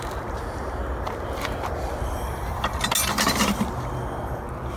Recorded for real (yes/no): yes